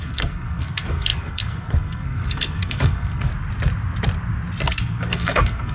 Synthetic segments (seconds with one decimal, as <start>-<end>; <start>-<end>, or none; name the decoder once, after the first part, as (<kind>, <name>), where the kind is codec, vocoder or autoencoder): 0.0-3.3 (codec, SNAC); 4.6-5.7